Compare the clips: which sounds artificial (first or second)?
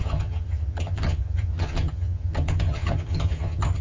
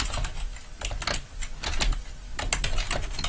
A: first